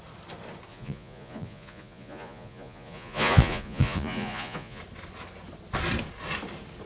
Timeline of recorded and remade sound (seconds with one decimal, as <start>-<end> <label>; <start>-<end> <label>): 0.0-0.7 recorded; 0.7-4.8 remade; 4.8-6.9 recorded